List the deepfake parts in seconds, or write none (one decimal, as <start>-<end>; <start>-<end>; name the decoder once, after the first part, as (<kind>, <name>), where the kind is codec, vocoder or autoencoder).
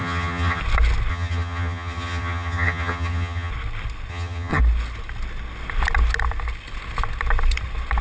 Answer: 0.0-0.6 (vocoder, HiFi-GAN); 1.1-3.5; 4.1-4.6